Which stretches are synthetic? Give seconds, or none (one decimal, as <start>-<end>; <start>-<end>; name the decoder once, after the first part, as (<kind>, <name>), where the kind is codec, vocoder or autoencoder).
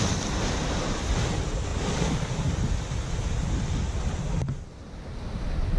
0.0-1.7 (vocoder, BigVGAN v2); 4.6-5.8